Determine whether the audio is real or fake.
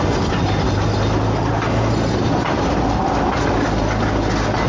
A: real